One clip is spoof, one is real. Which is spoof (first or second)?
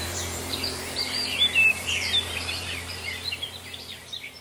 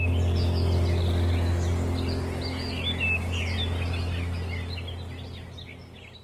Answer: first